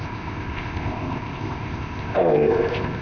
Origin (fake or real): fake